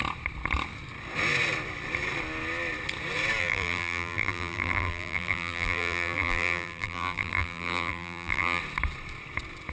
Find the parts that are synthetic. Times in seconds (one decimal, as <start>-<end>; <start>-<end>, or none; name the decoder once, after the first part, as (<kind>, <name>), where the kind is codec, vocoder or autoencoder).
3.4-8.6 (vocoder, BigVGAN v2)

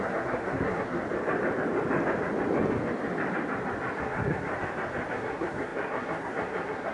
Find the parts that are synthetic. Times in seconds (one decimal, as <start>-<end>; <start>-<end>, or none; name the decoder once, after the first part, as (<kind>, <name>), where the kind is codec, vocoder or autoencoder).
0.0-1.0 (codec, SNAC); 4.0-4.5; 5.1-6.9

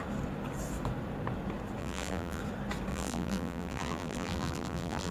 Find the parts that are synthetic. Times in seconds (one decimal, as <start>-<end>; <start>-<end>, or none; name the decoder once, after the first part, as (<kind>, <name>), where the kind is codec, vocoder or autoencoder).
1.8-2.4 (vocoder, BigVGAN v2); 2.9-5.1

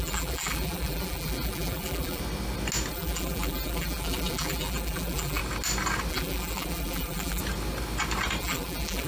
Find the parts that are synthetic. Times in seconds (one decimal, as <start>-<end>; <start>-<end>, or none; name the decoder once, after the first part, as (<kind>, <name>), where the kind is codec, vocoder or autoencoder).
0.0-2.2 (vocoder, BigVGAN v2); 2.9-5.4; 6.1-7.4; 8.4-9.1

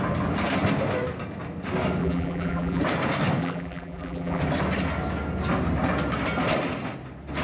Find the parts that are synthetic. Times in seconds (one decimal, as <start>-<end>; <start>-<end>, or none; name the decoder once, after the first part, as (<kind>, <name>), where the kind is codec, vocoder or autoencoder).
2.0-2.8 (vocoder, BigVGAN v2); 3.4-4.4